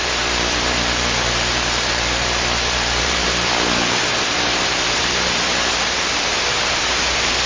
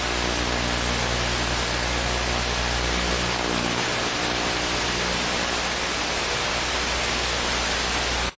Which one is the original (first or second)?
second